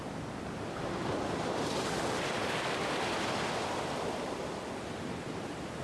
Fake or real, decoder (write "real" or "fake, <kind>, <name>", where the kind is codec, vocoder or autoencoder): fake, vocoder, BigVGAN v2